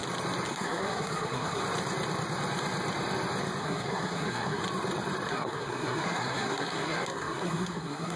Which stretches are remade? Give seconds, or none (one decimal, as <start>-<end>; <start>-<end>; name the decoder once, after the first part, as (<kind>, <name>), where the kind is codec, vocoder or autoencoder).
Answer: 0.5-1.6 (codec, SNAC); 3.6-4.6; 5.3-8.2